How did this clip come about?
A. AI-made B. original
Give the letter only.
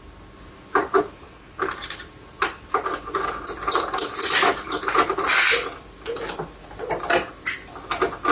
B